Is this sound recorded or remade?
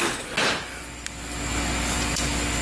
recorded